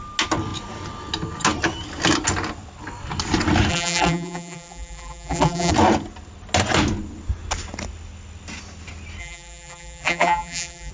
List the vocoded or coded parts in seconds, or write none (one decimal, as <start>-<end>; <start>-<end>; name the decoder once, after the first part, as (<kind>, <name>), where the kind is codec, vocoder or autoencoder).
3.7-5.7 (vocoder, BigVGAN v2); 9.2-10.9